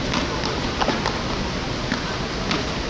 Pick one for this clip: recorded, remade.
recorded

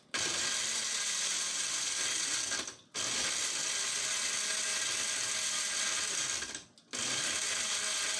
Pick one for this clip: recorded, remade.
recorded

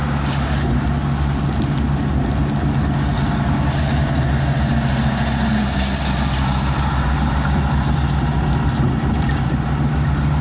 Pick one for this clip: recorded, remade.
recorded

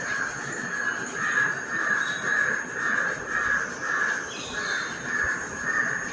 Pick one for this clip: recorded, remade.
recorded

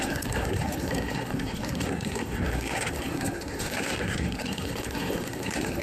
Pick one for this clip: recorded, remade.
remade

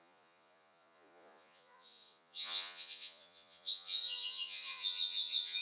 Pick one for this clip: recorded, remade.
remade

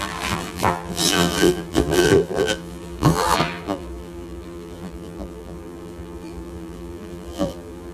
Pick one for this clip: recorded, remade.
remade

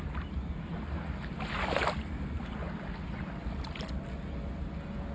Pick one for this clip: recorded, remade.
recorded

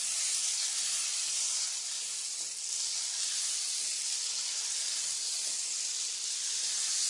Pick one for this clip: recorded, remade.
recorded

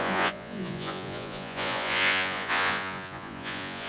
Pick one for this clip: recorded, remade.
remade